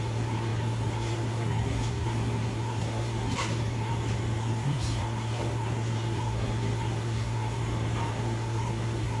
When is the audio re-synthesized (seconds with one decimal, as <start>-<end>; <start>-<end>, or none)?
0.0-3.9; 4.4-7.6; 8.1-9.2